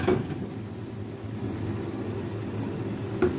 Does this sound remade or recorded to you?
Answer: recorded